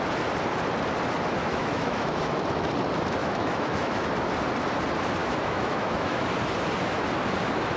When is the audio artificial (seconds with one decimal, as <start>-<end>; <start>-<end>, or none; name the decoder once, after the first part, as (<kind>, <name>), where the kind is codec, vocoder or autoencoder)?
1.4-2.7 (autoencoder, DAC-VAE); 3.2-4.1; 5.2-6.3

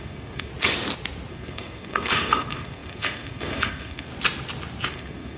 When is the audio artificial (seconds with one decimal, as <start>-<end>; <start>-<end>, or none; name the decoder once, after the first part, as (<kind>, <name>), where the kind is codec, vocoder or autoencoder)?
0.0-0.5 (codec, SNAC); 1.3-4.1; 4.9-5.4

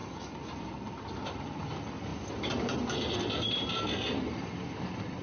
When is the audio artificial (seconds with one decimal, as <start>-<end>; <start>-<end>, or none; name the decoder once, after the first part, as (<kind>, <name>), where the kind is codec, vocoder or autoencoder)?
none

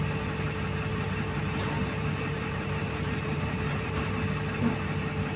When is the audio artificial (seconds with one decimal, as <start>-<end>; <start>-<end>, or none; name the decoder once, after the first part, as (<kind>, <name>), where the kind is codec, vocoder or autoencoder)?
0.9-4.1 (vocoder, BigVGAN v2)

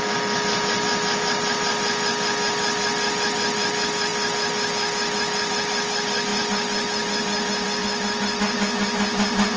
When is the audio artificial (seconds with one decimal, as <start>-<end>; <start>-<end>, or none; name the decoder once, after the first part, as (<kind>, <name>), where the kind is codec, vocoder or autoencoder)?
none